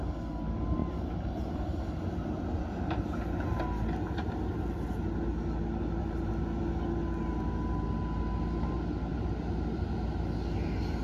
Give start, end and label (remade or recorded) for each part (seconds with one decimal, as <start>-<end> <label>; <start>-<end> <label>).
0.0-9.1 recorded; 9.1-10.1 remade; 10.1-11.0 recorded